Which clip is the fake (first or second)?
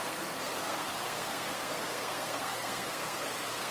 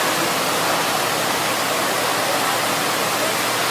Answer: first